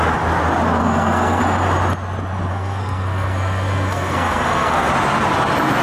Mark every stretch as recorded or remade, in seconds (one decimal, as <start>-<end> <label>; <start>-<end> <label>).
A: 0.0-0.8 recorded; 0.8-1.4 remade; 1.4-2.5 recorded; 2.5-4.9 remade; 4.9-5.8 recorded